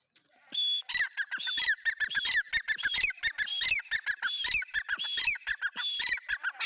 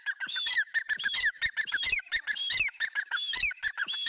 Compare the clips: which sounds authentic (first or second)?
first